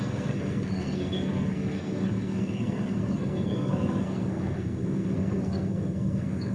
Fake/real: fake